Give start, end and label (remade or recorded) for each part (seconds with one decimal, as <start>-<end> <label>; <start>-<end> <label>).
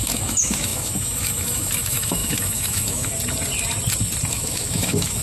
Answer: 0.0-3.1 remade; 3.1-4.3 recorded; 4.3-5.2 remade